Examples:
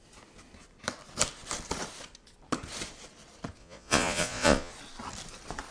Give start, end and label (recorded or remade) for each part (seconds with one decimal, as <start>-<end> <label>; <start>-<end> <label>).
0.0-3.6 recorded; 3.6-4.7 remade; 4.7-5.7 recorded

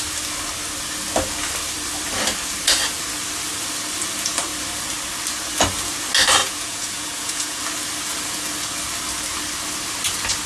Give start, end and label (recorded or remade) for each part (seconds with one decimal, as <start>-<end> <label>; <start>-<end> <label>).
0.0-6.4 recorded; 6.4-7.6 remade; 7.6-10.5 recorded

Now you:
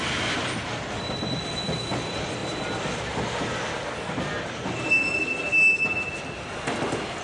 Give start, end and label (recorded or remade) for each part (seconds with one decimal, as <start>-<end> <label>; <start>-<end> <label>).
0.0-7.2 recorded

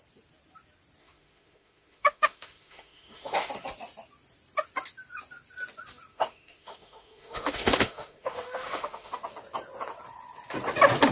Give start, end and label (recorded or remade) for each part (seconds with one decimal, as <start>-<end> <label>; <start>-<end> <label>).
0.0-1.0 recorded; 1.0-3.5 remade; 3.5-6.1 recorded; 6.1-9.1 remade; 9.1-11.1 recorded

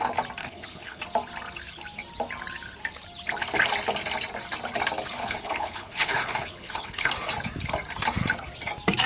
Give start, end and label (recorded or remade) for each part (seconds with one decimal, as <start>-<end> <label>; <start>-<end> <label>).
0.0-0.4 recorded; 0.4-1.0 remade; 1.0-5.2 recorded; 5.2-7.1 remade; 7.1-9.1 recorded

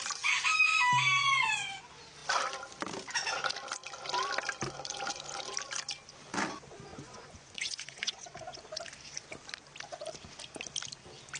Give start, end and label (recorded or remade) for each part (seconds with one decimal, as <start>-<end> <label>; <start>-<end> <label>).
0.0-1.2 recorded; 1.2-1.8 remade; 1.8-6.9 recorded; 6.9-8.6 remade; 8.6-11.4 recorded

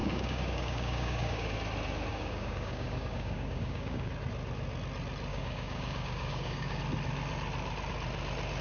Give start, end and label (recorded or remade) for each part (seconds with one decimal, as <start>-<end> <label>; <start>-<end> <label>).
0.0-1.5 remade; 1.5-2.1 recorded; 2.1-4.1 remade; 4.1-5.3 recorded; 5.3-6.8 remade; 6.8-8.6 recorded